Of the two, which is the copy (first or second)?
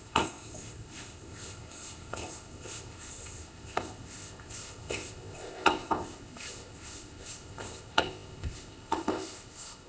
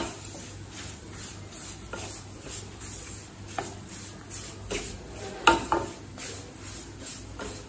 first